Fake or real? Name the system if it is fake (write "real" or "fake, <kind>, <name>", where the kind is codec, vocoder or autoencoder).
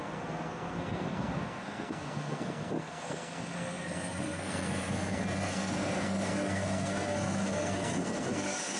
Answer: fake, codec, SNAC